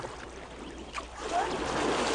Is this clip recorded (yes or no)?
yes